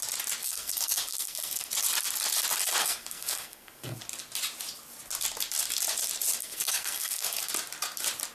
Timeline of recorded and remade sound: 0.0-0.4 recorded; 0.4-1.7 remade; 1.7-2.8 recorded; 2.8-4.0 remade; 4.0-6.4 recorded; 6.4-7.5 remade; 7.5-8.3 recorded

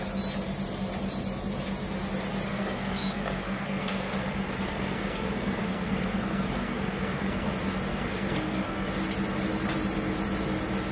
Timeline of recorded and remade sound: 0.0-2.5 recorded; 2.5-7.5 remade; 7.5-7.9 recorded; 7.9-8.9 remade; 8.9-10.9 recorded

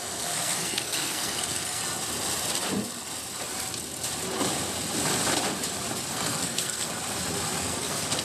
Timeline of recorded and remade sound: 0.0-1.8 remade; 1.8-6.1 recorded; 6.1-6.9 remade; 6.9-7.6 recorded; 7.6-8.2 remade